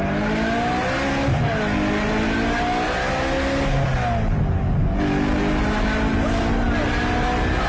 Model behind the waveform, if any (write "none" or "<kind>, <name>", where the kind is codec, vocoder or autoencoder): none